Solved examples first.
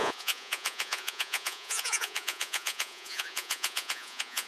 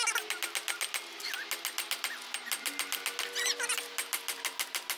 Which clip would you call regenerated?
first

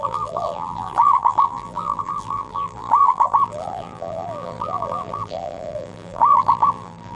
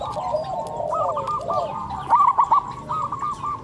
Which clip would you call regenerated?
first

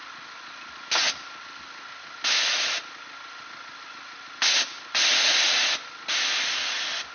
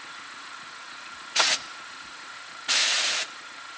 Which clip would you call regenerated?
second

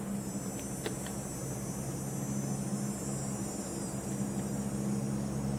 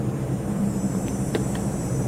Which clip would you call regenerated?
second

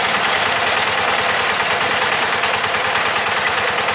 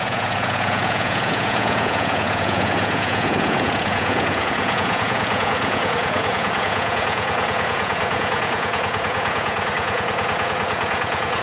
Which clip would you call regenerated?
second